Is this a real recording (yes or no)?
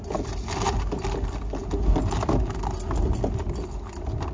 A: yes